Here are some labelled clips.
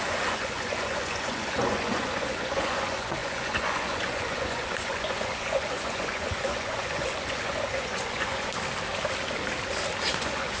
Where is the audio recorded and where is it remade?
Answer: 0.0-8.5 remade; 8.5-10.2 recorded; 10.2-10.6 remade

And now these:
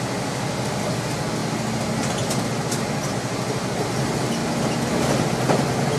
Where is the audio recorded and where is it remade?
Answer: 0.0-6.0 recorded

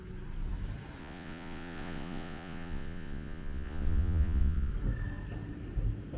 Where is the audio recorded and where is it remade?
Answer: 0.0-1.0 recorded; 1.0-4.7 remade; 4.7-6.2 recorded

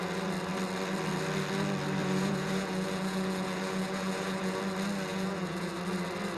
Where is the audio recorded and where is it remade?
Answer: 0.0-2.0 recorded; 2.0-4.6 remade; 4.6-5.1 recorded; 5.1-5.7 remade; 5.7-6.4 recorded

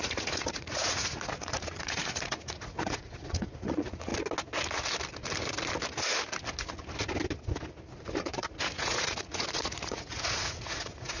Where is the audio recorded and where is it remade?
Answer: 0.0-4.1 remade; 4.1-8.2 recorded; 8.2-11.2 remade

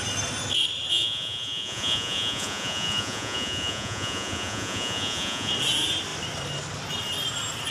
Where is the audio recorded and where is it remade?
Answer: 0.0-0.9 recorded; 0.9-5.5 remade; 5.5-7.7 recorded

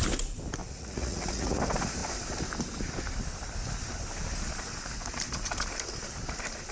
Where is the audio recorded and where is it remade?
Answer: 0.0-0.6 recorded; 0.6-1.6 remade; 1.6-6.7 recorded

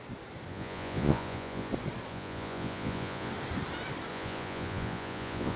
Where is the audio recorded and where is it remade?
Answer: 0.0-0.5 recorded; 0.5-1.7 remade; 1.7-2.1 recorded; 2.1-3.3 remade; 3.3-4.1 recorded; 4.1-5.6 remade